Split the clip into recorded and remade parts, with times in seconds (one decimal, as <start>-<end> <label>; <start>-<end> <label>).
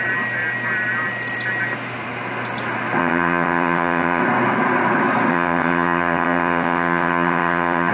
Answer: 0.0-3.0 recorded; 3.0-4.2 remade; 4.2-5.3 recorded; 5.3-7.9 remade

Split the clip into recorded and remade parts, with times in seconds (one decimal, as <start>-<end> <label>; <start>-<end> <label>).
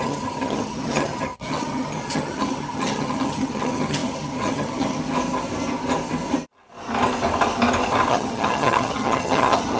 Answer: 0.0-5.0 remade; 5.0-8.1 recorded; 8.1-9.8 remade